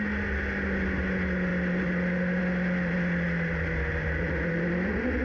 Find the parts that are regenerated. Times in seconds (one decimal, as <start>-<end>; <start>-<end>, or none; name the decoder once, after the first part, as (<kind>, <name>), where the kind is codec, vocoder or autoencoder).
none